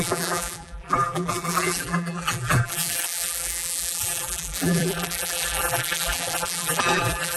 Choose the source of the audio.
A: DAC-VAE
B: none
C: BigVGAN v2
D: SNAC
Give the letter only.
C